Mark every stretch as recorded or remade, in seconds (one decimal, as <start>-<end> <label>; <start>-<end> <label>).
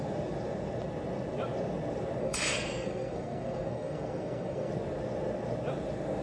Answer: 0.0-2.2 recorded; 2.2-4.7 remade; 4.7-6.2 recorded